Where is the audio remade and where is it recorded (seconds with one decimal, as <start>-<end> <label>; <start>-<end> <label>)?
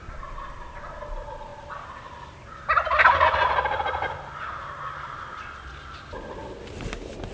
0.0-7.3 recorded